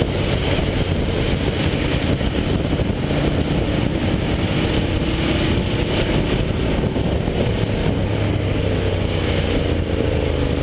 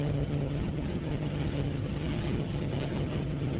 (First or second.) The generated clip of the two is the second